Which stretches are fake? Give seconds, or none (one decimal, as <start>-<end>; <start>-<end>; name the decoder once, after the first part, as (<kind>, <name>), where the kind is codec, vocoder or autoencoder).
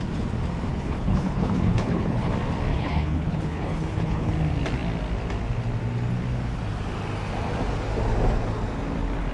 0.7-2.3 (codec, HILCodec); 2.7-4.3